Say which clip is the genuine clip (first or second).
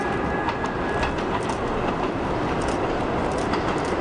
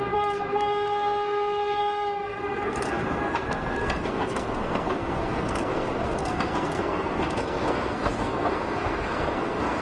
first